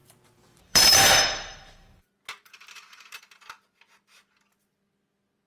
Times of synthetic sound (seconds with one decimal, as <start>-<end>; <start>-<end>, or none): 0.0-3.2